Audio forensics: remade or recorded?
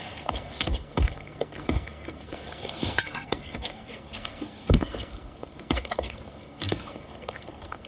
remade